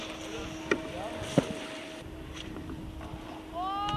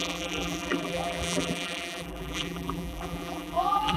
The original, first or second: first